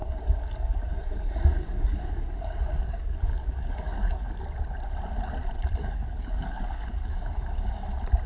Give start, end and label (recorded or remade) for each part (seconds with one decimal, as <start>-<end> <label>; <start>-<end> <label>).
0.0-4.3 remade; 4.3-5.8 recorded; 5.8-7.8 remade; 7.8-8.3 recorded